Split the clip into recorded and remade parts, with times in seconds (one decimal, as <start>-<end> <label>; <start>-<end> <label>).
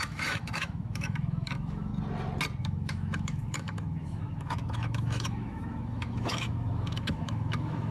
0.0-1.9 remade; 1.9-2.6 recorded; 2.6-7.9 remade